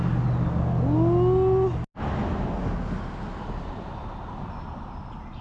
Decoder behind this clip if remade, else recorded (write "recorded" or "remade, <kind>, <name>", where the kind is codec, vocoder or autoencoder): recorded